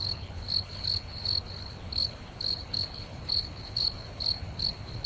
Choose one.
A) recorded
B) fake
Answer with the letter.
B